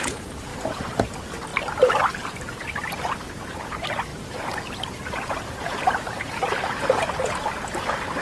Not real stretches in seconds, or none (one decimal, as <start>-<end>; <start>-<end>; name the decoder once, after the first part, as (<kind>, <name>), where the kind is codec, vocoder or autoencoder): 0.5-1.1 (vocoder, BigVGAN v2); 4.1-6.3